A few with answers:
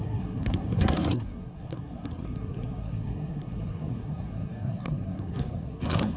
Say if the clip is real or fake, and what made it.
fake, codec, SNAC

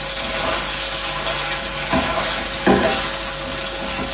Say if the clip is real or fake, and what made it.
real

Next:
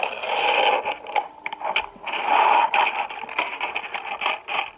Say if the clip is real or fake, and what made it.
real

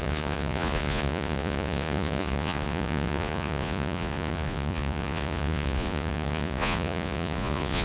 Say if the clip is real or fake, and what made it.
fake, vocoder, Vocos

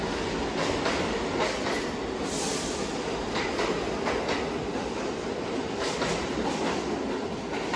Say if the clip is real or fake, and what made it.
real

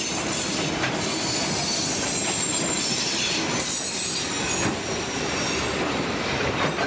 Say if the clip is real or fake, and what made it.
real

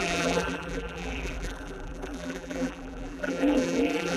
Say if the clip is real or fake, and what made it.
fake, vocoder, BigVGAN v2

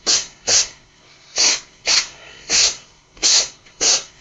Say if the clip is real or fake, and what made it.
fake, codec, SNAC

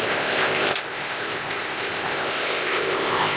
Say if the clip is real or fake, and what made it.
fake, codec, ZipCodec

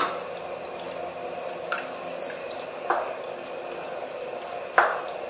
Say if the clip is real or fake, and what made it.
real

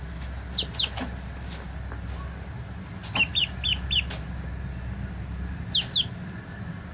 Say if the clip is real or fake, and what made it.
real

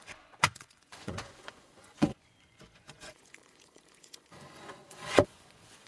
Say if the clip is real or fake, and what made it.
fake, vocoder, Vocos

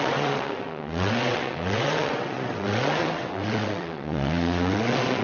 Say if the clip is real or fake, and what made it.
fake, vocoder, WaveNeXt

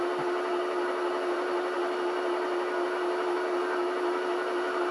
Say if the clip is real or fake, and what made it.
real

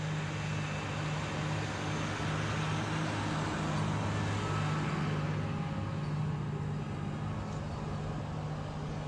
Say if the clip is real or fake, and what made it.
real